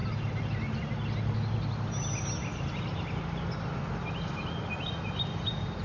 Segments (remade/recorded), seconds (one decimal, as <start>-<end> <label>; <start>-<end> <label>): 0.0-5.8 recorded